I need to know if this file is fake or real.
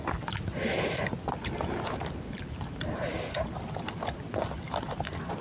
real